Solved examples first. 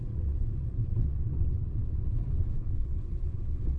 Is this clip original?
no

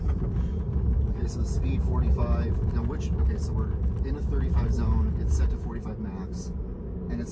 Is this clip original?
yes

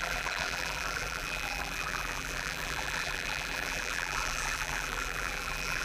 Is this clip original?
no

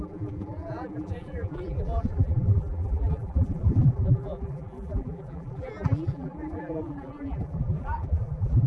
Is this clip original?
no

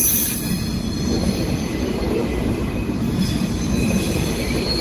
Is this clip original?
no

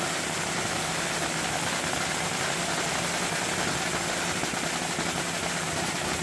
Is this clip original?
yes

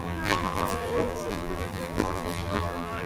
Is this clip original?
no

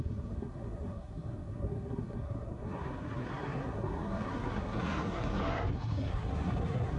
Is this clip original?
no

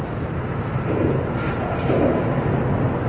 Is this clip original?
yes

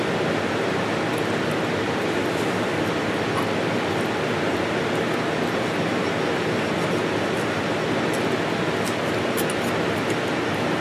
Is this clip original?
yes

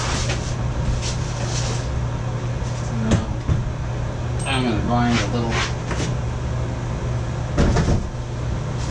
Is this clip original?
yes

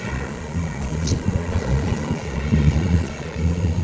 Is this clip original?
no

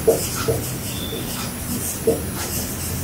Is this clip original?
yes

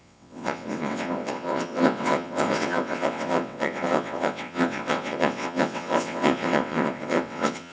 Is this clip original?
no